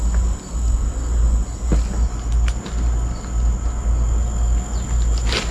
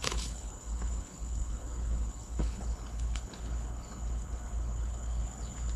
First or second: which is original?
first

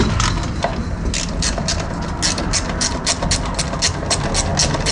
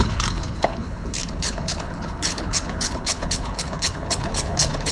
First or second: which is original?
first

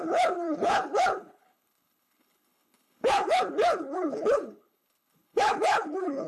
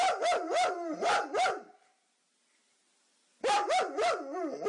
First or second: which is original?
second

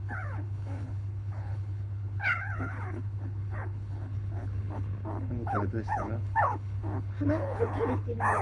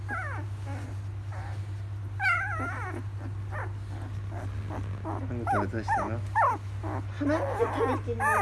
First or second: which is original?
second